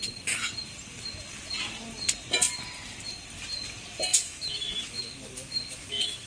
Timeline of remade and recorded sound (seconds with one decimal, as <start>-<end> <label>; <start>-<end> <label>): 0.0-4.1 recorded; 4.1-6.3 remade